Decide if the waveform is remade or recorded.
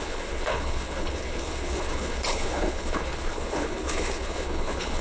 remade